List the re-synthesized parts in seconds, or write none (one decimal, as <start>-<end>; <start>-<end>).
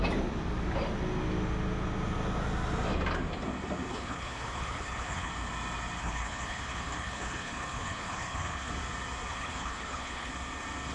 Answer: 3.9-5.3; 6.0-8.7; 9.3-10.3